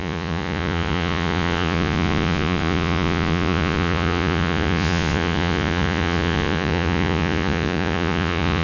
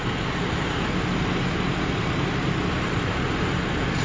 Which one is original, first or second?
second